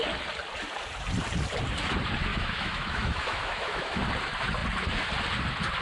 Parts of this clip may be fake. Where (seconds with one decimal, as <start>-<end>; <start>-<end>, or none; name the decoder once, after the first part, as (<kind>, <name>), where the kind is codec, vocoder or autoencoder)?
2.3-4.0 (autoencoder, DAC-VAE)